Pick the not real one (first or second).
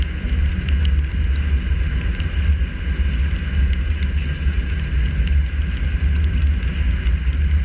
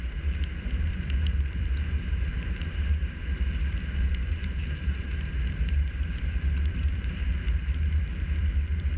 second